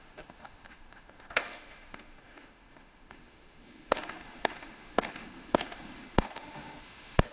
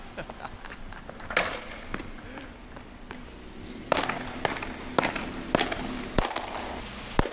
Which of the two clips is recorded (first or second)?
second